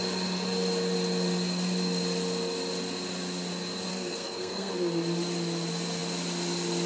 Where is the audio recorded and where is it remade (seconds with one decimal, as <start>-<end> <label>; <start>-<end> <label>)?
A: 0.0-3.9 recorded; 3.9-4.7 remade; 4.7-6.9 recorded